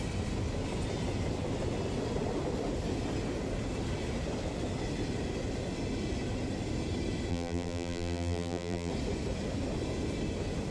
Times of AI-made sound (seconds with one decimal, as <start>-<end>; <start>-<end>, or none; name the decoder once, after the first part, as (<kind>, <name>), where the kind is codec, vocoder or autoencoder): 7.3-8.9 (vocoder, BigVGAN v2)